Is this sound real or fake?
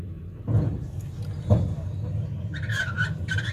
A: real